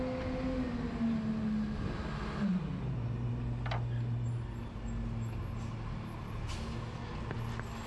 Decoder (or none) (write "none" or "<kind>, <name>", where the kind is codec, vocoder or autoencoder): none